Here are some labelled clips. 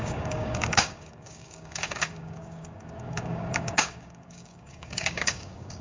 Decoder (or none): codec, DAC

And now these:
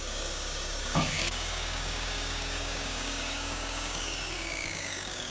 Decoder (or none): codec, DAC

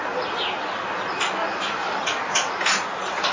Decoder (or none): none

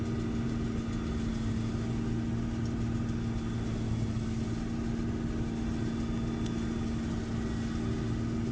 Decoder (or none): none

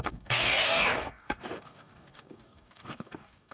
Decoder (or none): codec, DAC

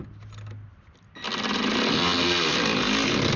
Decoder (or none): none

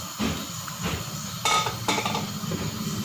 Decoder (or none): none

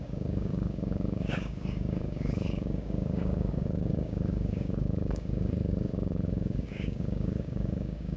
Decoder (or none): codec, DAC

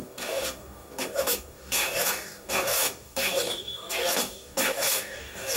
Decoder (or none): codec, DAC